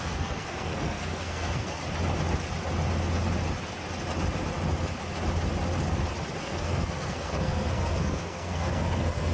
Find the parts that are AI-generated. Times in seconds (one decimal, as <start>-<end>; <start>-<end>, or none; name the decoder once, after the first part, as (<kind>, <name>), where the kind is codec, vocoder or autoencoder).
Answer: 0.0-1.8 (codec, SNAC); 6.4-9.3